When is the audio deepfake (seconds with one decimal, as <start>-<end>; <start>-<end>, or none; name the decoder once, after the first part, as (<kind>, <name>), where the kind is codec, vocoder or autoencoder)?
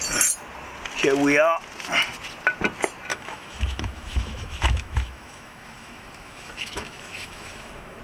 3.1-8.0 (autoencoder, DAC-VAE)